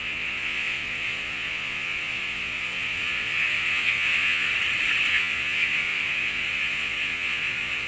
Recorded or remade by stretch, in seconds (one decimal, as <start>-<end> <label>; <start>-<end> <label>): 0.0-4.5 remade; 4.5-5.1 recorded; 5.1-7.9 remade